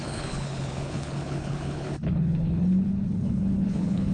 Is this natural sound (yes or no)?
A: no